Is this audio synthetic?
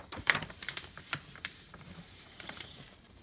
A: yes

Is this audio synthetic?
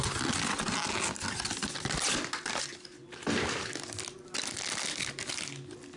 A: no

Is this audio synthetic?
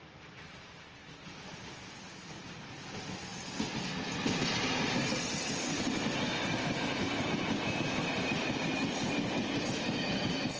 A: no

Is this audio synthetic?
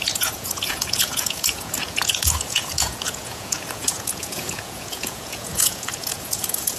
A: yes